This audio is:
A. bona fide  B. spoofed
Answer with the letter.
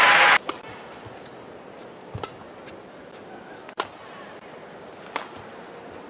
A